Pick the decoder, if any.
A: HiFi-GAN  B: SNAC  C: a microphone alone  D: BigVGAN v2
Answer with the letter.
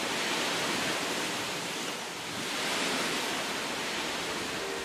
C